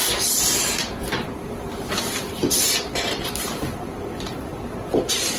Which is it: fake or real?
real